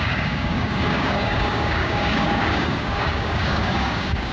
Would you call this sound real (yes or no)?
no